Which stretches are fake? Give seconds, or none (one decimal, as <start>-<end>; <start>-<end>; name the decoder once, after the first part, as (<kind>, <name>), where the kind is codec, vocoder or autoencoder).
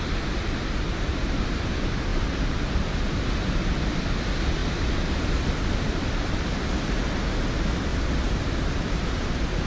7.9-9.7 (vocoder, BigVGAN v2)